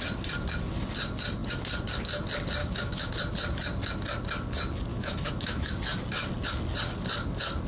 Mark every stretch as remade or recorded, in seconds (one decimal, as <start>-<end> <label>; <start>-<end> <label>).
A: 0.0-2.6 recorded; 2.6-3.1 remade; 3.1-4.9 recorded; 4.9-5.7 remade; 5.7-7.7 recorded